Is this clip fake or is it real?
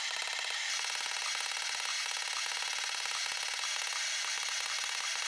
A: real